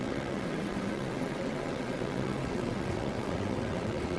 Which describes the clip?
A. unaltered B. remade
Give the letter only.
B